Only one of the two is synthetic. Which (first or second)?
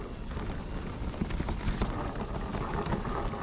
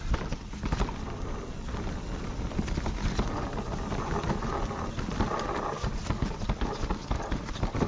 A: first